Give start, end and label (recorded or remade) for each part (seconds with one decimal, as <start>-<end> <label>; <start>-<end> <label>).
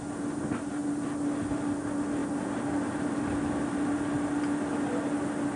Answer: 0.0-5.6 recorded